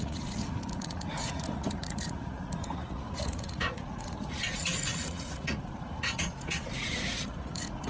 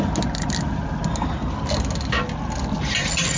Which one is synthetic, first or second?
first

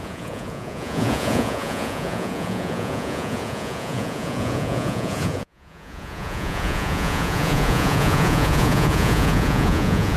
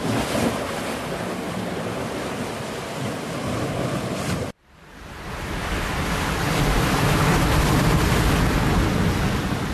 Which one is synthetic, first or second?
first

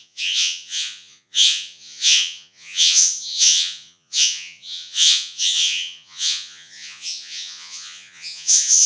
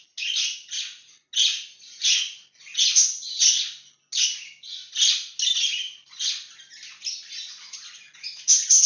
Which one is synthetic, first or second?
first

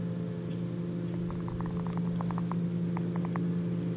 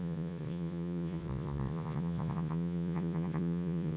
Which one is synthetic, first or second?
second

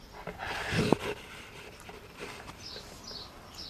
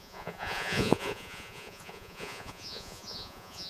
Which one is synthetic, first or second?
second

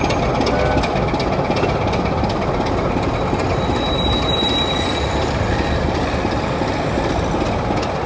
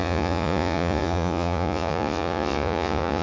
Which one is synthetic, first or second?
second